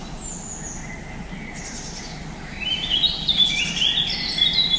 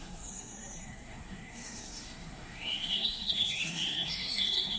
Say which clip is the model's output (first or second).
second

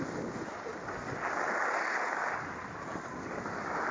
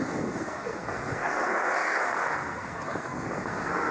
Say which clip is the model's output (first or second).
second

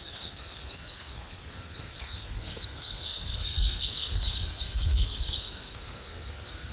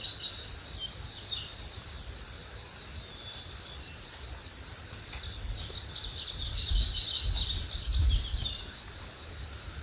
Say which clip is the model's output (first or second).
first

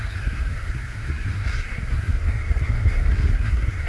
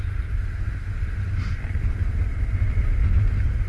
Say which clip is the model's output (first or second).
first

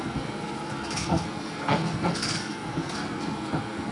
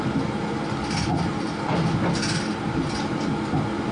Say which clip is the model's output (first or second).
first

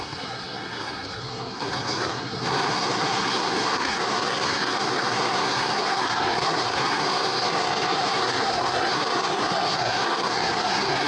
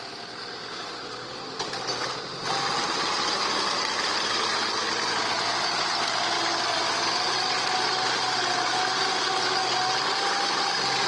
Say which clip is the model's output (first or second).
first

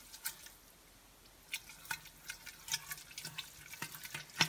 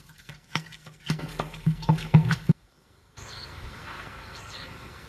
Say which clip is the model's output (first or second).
second